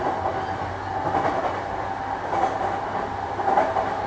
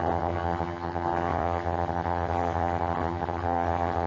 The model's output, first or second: second